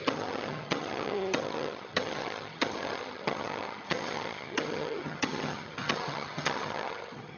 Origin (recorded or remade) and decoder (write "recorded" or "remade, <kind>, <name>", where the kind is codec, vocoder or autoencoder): remade, vocoder, HiFi-GAN